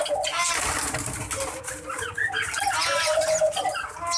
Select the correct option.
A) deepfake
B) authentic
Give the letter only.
B